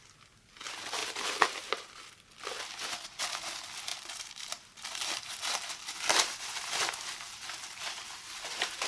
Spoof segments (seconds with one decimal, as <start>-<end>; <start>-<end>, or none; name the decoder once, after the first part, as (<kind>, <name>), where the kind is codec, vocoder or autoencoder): 1.0-2.0 (vocoder, BigVGAN v2); 3.9-8.9